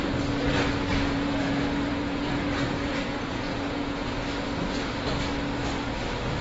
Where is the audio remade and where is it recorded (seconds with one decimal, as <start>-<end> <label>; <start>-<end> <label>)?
0.0-0.9 recorded; 0.9-1.5 remade; 1.5-1.9 recorded; 1.9-4.1 remade; 4.1-6.4 recorded

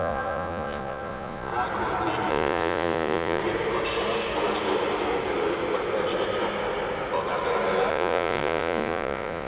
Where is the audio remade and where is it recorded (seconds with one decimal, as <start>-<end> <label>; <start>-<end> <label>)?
0.0-1.5 remade; 1.5-2.3 recorded; 2.3-3.4 remade; 3.4-7.9 recorded; 7.9-9.5 remade

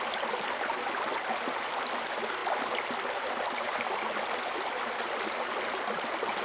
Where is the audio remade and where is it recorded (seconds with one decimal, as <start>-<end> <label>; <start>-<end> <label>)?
0.0-6.4 recorded

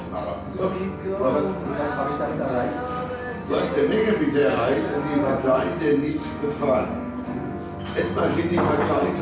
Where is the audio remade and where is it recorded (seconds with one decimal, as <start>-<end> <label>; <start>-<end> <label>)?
0.0-9.2 recorded

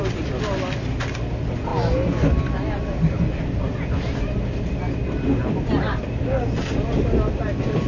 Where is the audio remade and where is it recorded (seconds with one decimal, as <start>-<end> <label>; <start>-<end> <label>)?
0.0-7.9 recorded

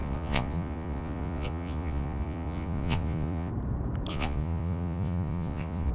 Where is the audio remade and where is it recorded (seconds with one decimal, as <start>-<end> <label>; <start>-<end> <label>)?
0.0-3.5 remade; 3.5-4.1 recorded; 4.1-5.9 remade